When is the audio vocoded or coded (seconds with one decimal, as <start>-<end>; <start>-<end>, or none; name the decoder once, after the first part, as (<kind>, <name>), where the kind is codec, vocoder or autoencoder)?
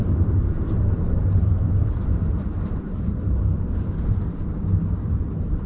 0.0-0.6 (vocoder, BigVGAN v2); 1.2-4.2